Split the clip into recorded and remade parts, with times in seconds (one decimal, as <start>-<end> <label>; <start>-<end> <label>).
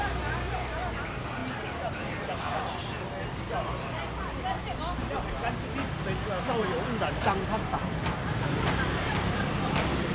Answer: 0.0-6.6 recorded; 6.6-9.5 remade; 9.5-10.1 recorded